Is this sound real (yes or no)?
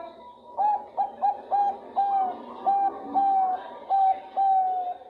yes